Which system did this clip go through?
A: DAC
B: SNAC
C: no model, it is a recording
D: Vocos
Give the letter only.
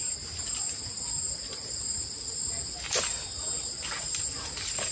C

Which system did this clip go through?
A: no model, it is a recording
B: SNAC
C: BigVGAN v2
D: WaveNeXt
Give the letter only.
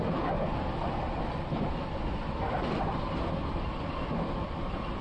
A